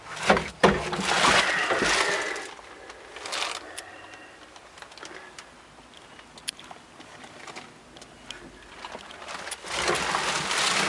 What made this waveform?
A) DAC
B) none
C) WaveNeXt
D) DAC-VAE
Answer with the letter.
B